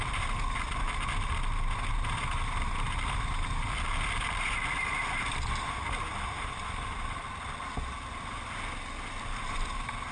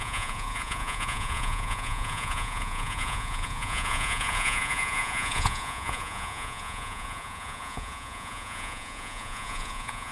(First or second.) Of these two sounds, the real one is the first